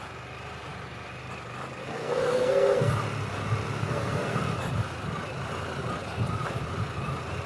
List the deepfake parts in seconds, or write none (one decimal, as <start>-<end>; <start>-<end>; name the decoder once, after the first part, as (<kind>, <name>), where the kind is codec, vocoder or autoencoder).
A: 1.8-2.9 (codec, SNAC); 3.8-4.4

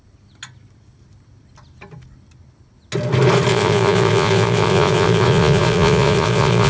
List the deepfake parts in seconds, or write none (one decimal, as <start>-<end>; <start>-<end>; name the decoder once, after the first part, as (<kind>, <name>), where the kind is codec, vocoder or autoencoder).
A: 3.5-6.7 (vocoder, Vocos)

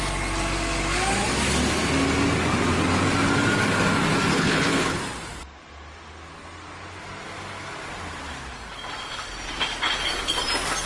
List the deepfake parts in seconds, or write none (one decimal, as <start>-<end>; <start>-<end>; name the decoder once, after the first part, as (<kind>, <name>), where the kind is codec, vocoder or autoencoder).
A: 4.3-5.0 (codec, HILCodec)

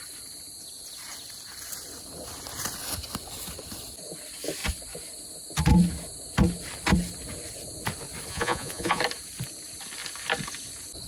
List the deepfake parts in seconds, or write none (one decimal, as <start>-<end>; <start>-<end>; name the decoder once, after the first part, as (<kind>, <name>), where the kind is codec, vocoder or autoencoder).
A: 8.3-9.0 (vocoder, Vocos)

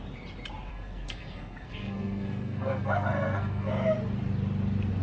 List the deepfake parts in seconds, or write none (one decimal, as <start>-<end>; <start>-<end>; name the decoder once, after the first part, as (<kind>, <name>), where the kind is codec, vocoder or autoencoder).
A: 0.7-3.7 (codec, SNAC)

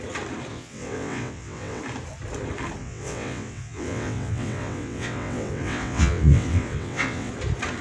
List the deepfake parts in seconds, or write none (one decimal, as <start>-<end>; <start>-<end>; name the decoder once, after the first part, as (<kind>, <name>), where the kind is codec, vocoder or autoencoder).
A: 0.5-1.8 (vocoder, WaveNeXt); 2.8-7.3